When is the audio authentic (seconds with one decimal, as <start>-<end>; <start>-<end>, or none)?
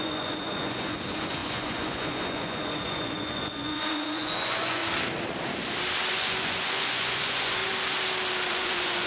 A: 4.8-6.1; 7.6-8.5